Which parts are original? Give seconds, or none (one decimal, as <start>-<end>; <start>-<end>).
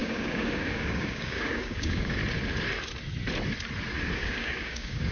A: 2.2-4.2